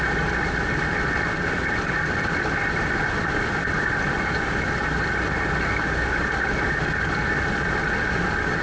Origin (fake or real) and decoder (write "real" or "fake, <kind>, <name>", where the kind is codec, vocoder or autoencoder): real